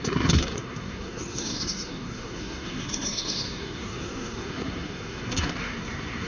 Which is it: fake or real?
fake